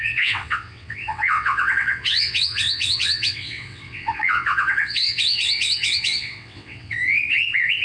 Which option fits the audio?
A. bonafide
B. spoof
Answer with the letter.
B